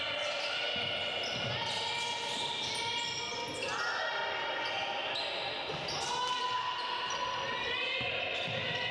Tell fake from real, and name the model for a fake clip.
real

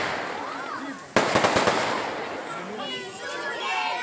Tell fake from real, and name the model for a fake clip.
real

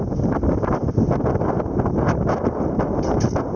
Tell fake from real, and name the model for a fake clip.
real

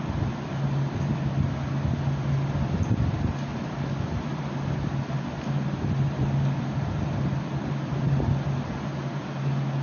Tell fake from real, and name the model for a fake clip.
real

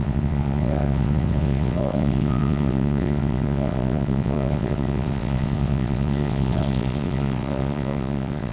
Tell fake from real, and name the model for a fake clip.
fake, vocoder, WaveNeXt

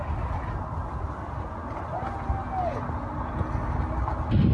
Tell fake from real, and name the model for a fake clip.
real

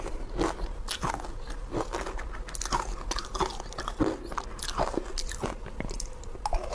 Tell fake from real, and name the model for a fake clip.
real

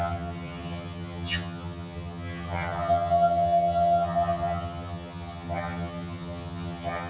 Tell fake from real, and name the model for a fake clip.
fake, vocoder, HiFi-GAN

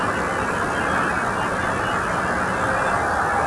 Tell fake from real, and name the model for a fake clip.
real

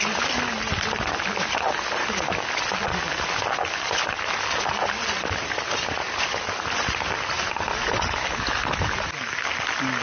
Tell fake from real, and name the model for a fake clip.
real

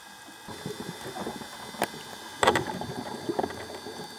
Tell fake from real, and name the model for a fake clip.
real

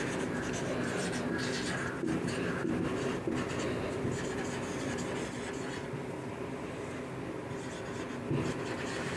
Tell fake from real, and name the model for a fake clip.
real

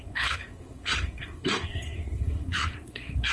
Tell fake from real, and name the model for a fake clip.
fake, codec, SNAC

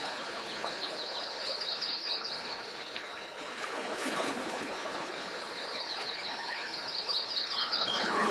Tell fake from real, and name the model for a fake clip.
fake, codec, HILCodec